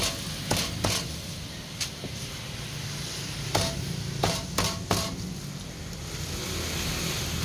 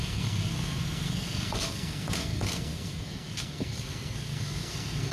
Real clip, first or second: first